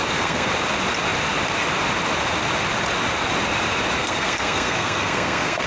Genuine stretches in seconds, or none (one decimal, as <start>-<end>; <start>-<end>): 0.5-4.0